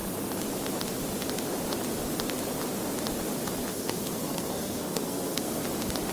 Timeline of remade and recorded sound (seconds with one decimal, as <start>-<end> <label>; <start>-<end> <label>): 0.0-3.7 recorded; 3.7-5.6 remade; 5.6-6.1 recorded